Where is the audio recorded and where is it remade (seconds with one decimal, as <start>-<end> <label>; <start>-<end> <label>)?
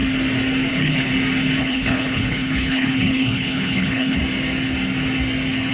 0.0-0.7 recorded; 0.7-1.1 remade; 1.1-1.6 recorded; 1.6-4.2 remade; 4.2-5.7 recorded